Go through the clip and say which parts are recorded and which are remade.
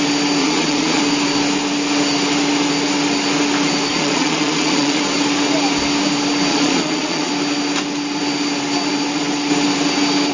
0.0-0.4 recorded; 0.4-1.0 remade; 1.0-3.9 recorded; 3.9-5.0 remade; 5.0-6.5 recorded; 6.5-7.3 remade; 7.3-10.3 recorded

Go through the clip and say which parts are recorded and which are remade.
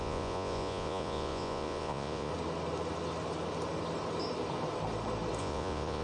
0.0-2.3 remade; 2.3-5.4 recorded; 5.4-6.0 remade